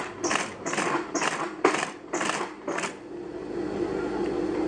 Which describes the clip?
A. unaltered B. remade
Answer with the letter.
A